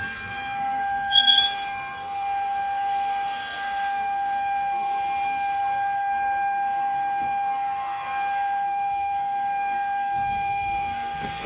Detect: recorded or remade remade